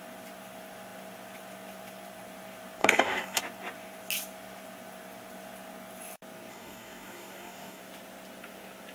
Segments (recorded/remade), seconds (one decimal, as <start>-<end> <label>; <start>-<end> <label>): 0.0-2.8 recorded; 2.8-3.4 remade; 3.4-6.5 recorded; 6.5-7.8 remade; 7.8-8.9 recorded